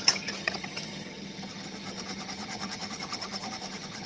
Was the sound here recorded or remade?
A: remade